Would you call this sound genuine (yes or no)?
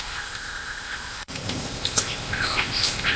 no